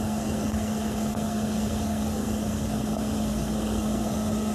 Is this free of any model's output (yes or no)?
no